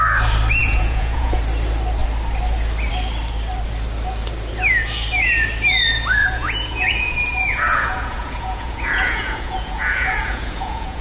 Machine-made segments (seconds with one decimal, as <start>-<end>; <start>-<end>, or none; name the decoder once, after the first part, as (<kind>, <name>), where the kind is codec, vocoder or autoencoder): 0.6-1.4 (vocoder, Vocos); 6.2-11.0